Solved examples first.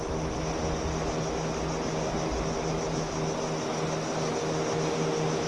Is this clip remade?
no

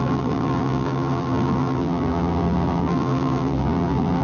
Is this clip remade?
yes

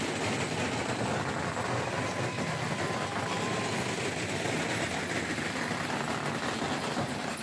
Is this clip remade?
no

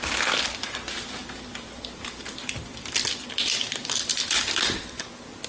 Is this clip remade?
yes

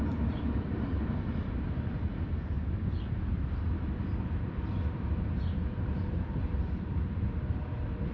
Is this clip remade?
yes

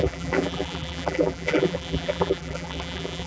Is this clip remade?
yes